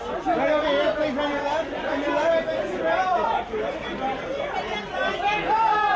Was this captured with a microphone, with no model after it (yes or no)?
yes